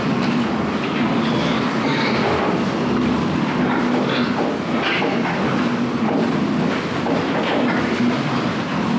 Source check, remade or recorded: recorded